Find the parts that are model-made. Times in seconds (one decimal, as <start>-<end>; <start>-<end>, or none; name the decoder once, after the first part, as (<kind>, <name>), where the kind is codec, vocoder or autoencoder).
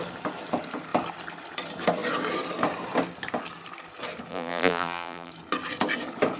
4.3-5.3 (vocoder, BigVGAN v2)